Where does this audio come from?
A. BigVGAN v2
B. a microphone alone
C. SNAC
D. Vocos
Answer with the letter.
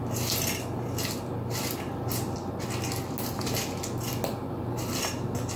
B